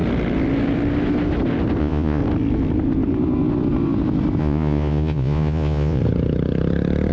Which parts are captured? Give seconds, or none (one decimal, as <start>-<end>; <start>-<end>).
0.0-1.8; 2.2-4.4; 6.0-7.1